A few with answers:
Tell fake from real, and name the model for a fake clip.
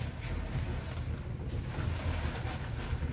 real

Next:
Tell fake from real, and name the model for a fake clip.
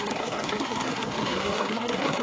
fake, codec, SNAC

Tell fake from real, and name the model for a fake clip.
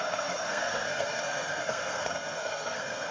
fake, codec, SNAC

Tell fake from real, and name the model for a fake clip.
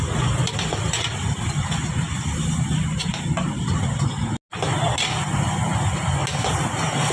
real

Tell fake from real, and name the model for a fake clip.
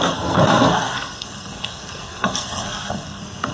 fake, codec, SNAC